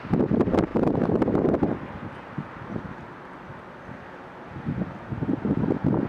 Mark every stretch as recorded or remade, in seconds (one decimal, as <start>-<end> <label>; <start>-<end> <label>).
0.0-6.1 recorded